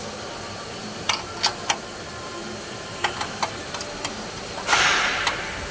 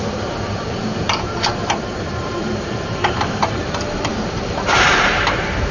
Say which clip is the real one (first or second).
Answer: first